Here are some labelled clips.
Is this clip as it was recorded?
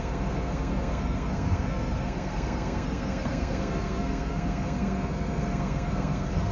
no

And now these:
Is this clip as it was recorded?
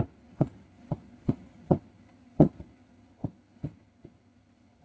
no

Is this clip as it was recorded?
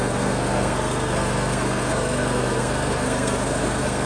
no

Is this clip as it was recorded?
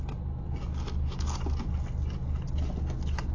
yes